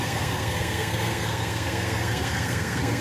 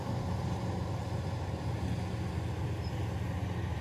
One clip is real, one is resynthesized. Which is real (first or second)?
second